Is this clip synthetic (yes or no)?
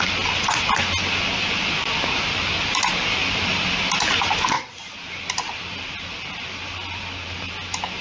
no